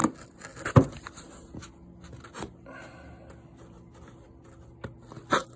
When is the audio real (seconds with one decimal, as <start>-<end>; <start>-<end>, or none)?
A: 0.0-5.6